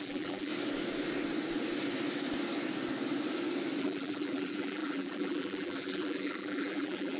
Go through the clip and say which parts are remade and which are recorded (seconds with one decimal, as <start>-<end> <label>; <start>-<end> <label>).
0.0-0.5 remade; 0.5-3.8 recorded; 3.8-7.2 remade